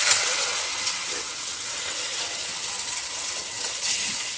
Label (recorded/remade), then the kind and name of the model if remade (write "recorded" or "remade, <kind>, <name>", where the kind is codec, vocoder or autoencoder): remade, vocoder, WaveNeXt